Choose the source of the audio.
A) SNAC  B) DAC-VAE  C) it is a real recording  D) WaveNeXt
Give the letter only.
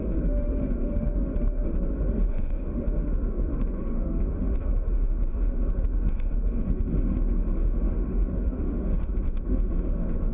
B